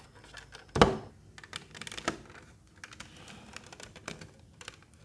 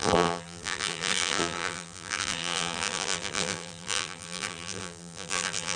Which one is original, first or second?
first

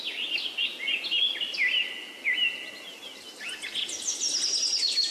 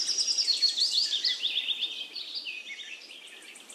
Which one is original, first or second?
first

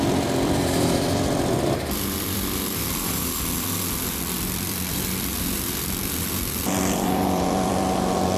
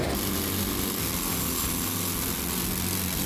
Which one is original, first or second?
second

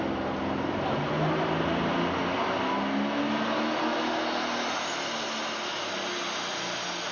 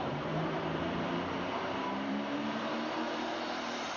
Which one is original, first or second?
first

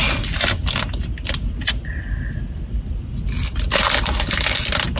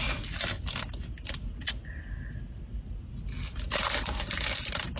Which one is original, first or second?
second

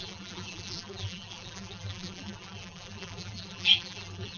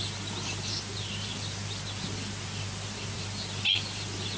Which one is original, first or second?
second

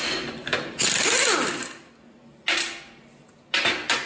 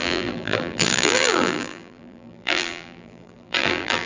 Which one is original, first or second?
first